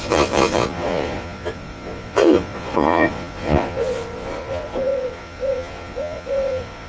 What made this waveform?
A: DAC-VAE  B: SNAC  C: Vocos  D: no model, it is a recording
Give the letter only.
C